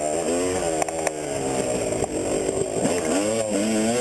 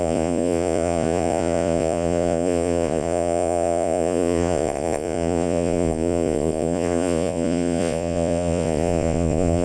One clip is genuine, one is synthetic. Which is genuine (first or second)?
first